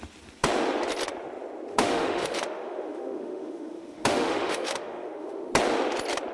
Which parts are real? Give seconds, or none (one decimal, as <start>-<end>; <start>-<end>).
0.0-1.7; 5.5-6.3